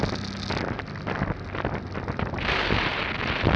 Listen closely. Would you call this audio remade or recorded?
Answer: recorded